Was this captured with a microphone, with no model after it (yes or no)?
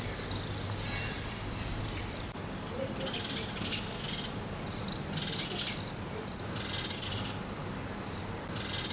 yes